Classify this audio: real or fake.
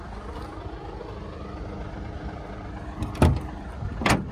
real